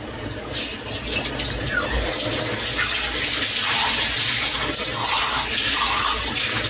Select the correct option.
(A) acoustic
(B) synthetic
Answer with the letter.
A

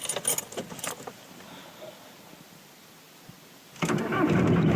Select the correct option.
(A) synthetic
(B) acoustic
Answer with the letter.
B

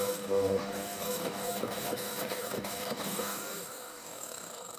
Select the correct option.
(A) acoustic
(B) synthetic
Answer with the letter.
B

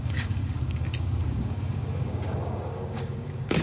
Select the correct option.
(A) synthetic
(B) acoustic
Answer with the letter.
A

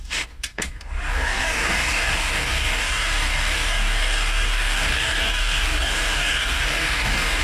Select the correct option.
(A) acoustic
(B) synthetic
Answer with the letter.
B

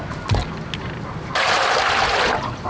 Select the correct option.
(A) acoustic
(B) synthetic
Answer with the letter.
A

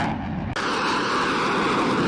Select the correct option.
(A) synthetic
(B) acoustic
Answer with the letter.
B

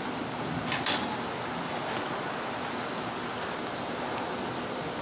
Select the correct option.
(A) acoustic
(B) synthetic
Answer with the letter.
A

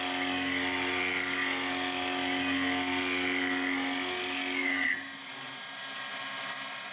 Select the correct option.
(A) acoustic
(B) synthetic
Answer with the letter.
A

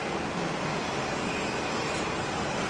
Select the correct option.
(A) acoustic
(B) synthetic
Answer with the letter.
A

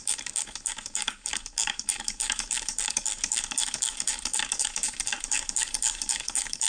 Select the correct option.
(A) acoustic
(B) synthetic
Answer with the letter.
B